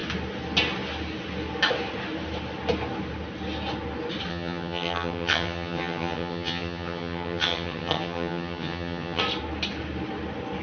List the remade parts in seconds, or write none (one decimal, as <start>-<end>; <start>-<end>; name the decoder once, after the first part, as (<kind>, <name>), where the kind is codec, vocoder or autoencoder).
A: 4.3-9.2 (vocoder, HiFi-GAN)